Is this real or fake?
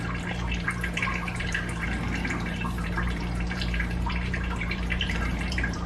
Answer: fake